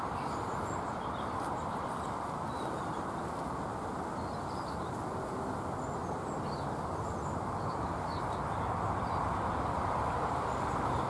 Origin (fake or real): real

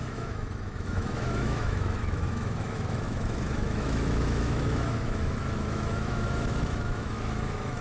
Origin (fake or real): fake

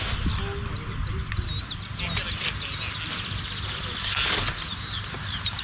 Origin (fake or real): real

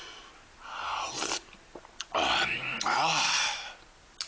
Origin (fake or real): real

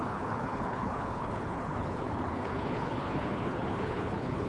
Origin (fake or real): fake